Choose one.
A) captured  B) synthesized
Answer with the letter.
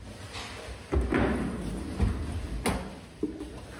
A